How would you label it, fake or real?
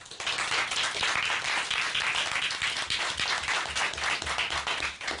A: real